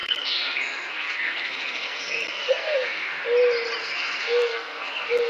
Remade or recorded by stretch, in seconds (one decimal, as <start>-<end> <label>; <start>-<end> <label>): 0.0-3.2 remade; 3.2-3.8 recorded; 3.8-5.3 remade

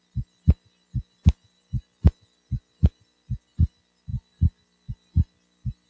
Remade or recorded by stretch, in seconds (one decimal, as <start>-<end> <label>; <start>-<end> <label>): 0.0-5.9 recorded

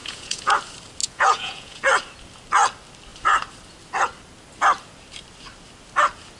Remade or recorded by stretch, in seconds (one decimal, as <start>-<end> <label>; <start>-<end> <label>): 0.0-0.5 remade; 0.5-1.0 recorded; 1.0-1.8 remade; 1.8-6.4 recorded

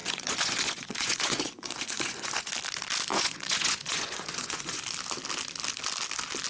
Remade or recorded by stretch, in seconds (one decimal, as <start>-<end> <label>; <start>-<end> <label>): 0.0-2.5 remade; 2.5-3.1 recorded; 3.1-4.8 remade; 4.8-6.5 recorded

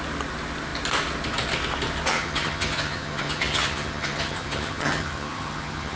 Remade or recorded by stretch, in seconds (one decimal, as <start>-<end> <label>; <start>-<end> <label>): 0.0-2.1 recorded; 2.1-6.0 remade

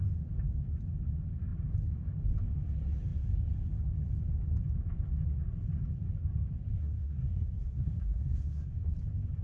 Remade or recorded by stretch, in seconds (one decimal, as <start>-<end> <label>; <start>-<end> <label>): 0.0-6.8 recorded; 6.8-8.7 remade; 8.7-9.4 recorded